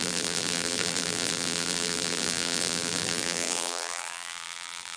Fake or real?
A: fake